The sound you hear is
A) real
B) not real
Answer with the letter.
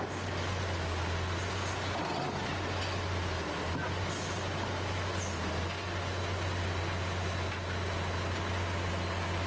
A